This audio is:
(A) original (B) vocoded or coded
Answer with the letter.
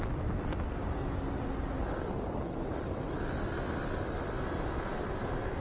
A